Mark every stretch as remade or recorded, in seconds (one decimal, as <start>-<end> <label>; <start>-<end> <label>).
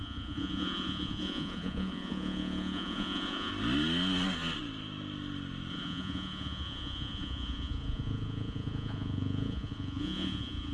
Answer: 0.0-3.5 remade; 3.5-5.7 recorded; 5.7-10.7 remade